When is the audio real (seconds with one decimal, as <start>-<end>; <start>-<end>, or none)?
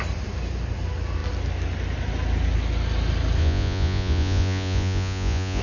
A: 0.0-3.4